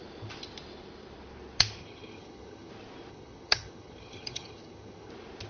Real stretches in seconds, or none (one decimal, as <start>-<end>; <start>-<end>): 0.0-1.8; 2.7-3.1; 5.1-5.5